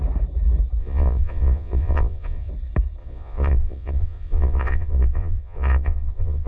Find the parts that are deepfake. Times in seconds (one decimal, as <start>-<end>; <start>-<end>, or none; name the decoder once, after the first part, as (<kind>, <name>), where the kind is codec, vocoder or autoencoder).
0.8-2.5 (vocoder, Vocos); 3.0-6.5